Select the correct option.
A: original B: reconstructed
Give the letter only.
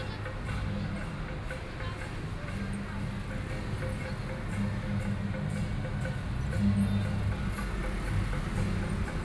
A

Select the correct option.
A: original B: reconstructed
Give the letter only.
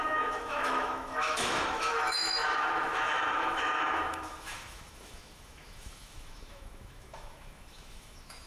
B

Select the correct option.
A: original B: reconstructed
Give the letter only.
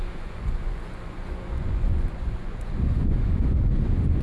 B